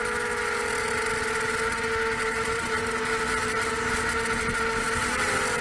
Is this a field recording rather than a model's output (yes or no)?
yes